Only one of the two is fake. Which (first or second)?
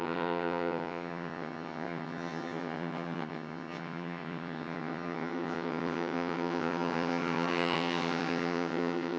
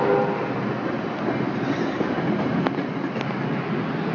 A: first